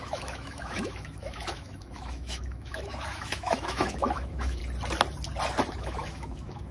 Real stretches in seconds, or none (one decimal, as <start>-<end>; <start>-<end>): 4.6-5.7